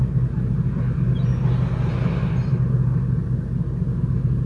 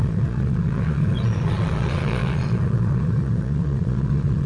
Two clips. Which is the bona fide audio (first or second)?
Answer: first